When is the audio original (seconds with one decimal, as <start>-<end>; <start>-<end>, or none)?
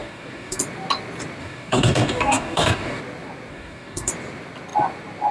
0.6-1.4; 3.0-3.5; 4.1-5.3